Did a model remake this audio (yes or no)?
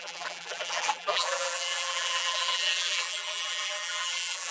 yes